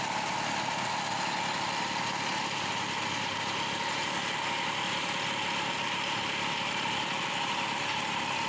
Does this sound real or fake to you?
real